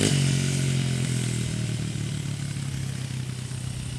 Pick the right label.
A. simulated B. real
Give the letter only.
B